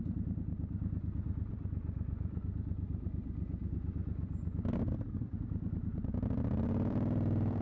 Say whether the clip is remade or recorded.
remade